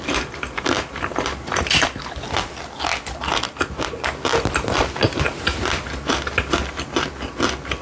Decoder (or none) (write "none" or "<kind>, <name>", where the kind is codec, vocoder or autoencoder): none